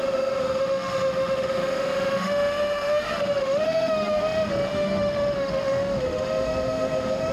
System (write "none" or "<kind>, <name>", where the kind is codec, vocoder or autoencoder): autoencoder, DAC-VAE